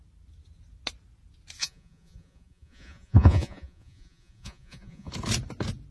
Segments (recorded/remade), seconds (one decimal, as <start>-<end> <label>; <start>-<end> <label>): 0.0-1.6 recorded; 1.6-5.1 remade; 5.1-5.9 recorded